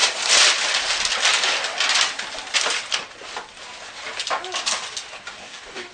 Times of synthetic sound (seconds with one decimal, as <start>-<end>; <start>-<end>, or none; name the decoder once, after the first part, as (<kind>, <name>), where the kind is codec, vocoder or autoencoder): 5.4-5.9 (codec, DAC)